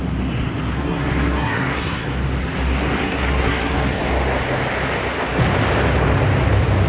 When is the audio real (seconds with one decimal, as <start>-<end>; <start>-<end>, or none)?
0.0-0.8; 2.1-3.0; 4.0-6.9